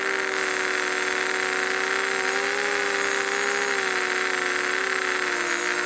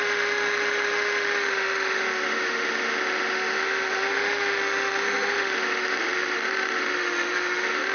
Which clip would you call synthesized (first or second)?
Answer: second